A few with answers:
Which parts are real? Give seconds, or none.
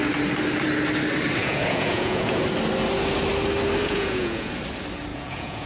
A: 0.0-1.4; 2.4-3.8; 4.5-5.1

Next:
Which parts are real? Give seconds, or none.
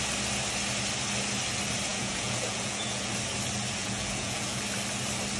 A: 0.0-1.9; 3.1-3.8; 4.6-5.4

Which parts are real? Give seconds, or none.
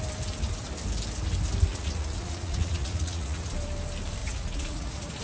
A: 0.0-1.7; 3.4-4.2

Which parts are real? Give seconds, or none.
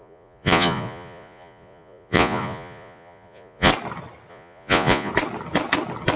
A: 3.7-4.3; 5.1-6.2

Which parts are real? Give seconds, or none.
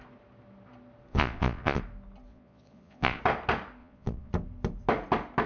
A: 0.0-1.1; 1.8-2.3; 3.2-3.8; 4.3-5.5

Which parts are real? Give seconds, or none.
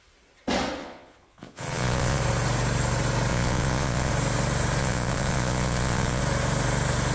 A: 0.0-0.8; 2.2-3.3; 4.1-4.8; 6.2-7.1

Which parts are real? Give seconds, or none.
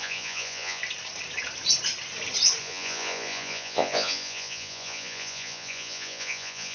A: 0.8-2.6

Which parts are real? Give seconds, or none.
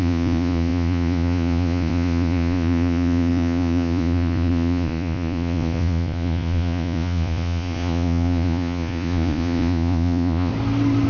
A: 10.5-11.1